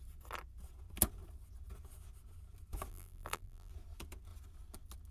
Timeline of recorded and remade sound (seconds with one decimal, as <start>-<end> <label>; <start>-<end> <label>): 0.0-2.9 recorded; 2.9-3.7 remade; 3.7-5.1 recorded